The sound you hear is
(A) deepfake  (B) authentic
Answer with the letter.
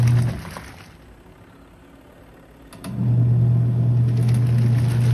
B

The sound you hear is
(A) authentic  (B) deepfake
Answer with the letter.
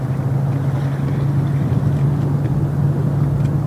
A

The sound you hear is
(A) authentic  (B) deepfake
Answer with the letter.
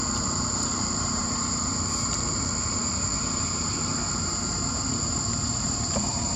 B